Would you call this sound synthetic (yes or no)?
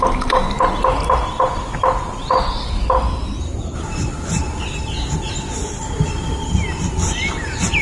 no